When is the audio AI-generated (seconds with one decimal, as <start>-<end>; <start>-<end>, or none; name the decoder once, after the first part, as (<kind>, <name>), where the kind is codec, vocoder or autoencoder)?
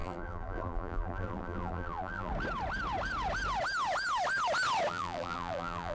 0.0-2.3 (vocoder, BigVGAN v2); 4.9-5.9